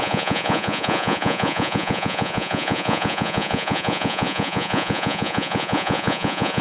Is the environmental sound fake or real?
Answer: fake